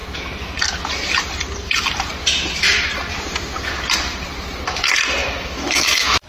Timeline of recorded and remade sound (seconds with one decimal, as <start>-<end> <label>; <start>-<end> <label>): 0.0-5.2 recorded; 5.2-6.3 remade